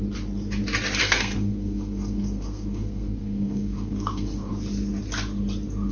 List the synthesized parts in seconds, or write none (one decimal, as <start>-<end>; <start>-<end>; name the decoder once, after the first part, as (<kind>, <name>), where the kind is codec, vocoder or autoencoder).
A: 1.0-4.5 (codec, SNAC)